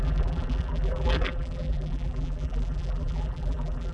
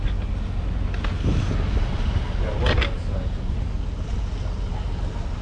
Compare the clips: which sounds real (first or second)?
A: second